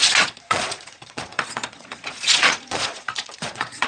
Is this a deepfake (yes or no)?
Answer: yes